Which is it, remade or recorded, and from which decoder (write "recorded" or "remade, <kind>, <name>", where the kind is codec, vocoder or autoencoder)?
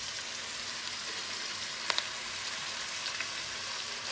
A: recorded